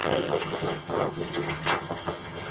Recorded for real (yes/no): no